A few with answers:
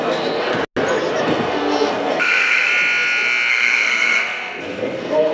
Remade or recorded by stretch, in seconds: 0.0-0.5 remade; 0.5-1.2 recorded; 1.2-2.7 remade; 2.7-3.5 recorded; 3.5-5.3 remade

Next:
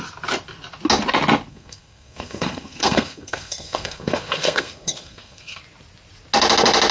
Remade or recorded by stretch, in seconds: 0.0-1.5 recorded; 1.5-5.6 remade; 5.6-6.9 recorded

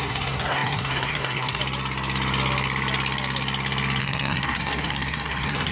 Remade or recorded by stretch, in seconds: 0.0-1.6 remade; 1.6-4.0 recorded; 4.0-5.7 remade

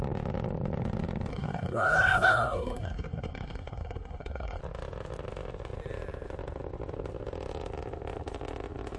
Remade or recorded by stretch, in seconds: 0.0-1.3 recorded; 1.3-4.6 remade; 4.6-9.0 recorded